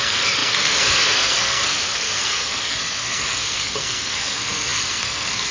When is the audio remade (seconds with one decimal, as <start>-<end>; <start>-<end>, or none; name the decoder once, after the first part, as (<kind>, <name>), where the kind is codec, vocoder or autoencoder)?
0.0-5.5 (codec, SNAC)